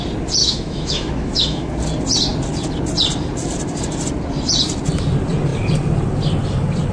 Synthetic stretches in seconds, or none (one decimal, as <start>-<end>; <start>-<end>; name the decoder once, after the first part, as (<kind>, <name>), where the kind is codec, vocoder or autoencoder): 0.4-1.7 (autoencoder, DAC-VAE)